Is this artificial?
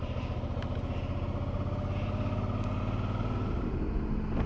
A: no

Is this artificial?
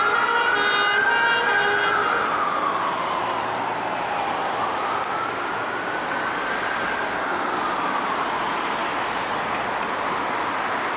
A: no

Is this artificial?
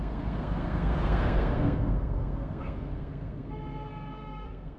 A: yes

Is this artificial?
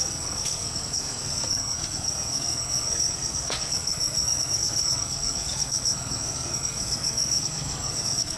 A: yes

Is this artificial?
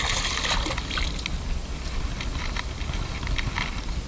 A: no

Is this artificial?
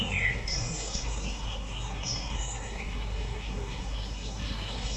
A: yes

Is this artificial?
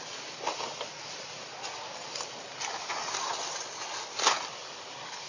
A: no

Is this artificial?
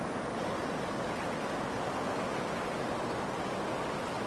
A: no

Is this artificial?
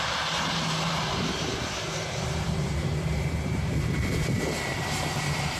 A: yes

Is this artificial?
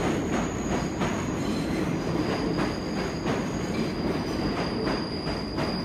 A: no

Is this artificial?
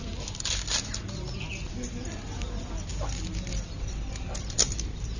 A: no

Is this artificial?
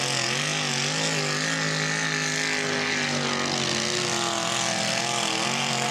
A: no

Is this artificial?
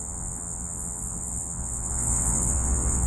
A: yes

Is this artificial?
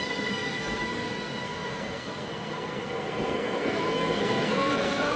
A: yes